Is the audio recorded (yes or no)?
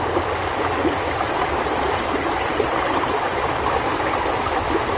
yes